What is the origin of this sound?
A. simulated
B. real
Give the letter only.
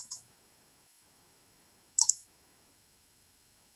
A